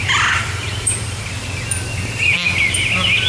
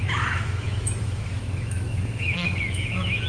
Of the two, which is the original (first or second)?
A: first